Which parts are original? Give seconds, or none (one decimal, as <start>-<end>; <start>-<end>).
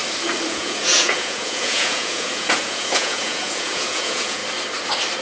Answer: 0.0-0.5; 4.4-5.2